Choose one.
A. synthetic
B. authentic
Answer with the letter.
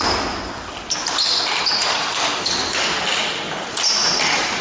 B